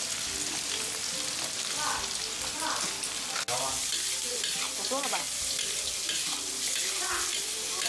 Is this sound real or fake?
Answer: real